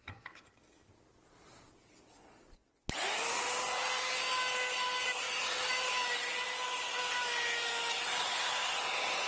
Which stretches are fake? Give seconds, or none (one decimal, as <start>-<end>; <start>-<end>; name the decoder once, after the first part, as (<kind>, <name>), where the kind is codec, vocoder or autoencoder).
none